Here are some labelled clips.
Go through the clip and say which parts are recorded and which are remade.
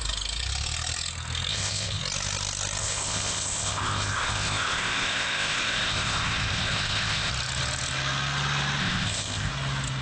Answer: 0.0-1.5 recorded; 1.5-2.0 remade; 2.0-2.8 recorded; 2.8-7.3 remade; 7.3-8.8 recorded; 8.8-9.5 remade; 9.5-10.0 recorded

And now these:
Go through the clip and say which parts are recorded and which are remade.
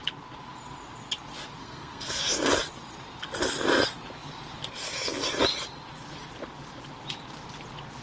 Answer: 0.0-1.6 recorded; 1.6-2.2 remade; 2.2-8.0 recorded